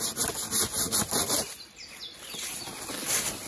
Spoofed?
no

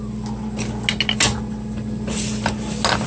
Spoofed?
no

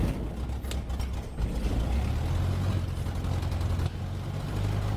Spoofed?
no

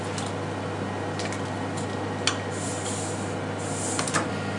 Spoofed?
no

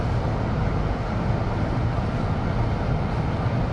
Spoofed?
no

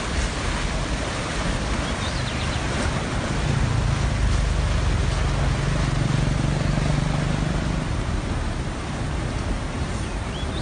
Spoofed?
no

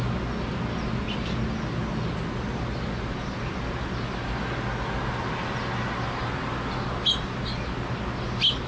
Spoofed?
no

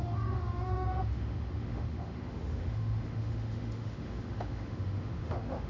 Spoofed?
yes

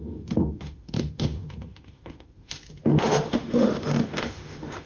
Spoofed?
yes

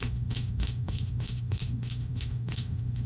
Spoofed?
yes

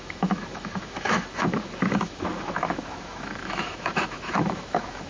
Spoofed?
yes